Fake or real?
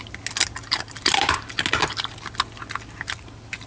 real